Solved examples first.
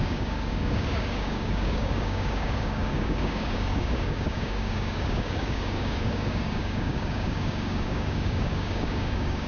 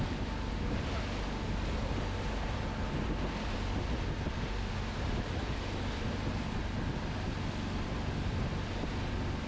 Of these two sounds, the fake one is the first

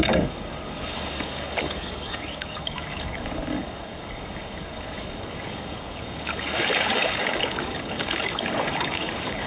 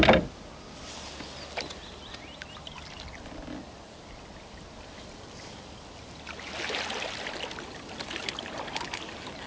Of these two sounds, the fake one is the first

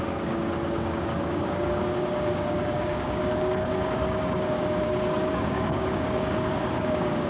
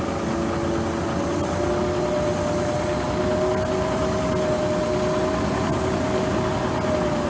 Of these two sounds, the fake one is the first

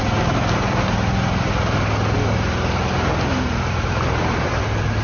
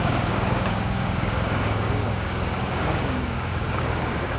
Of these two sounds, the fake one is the second